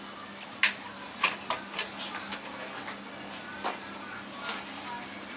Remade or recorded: recorded